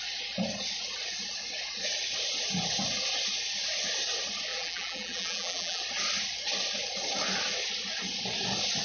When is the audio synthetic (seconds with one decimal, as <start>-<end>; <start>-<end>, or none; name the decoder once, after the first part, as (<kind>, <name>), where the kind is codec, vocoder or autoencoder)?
4.5-5.8 (vocoder, BigVGAN v2)